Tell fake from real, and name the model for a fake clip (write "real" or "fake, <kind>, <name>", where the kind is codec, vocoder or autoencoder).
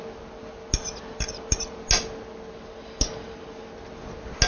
real